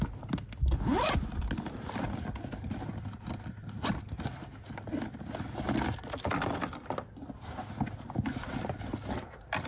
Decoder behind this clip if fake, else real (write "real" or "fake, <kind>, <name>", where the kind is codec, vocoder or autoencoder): real